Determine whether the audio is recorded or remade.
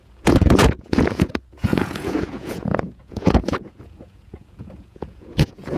remade